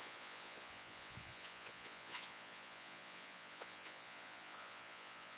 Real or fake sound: fake